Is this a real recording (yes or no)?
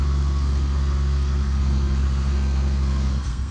no